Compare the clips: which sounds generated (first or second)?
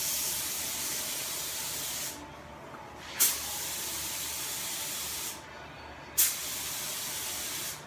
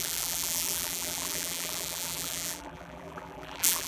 second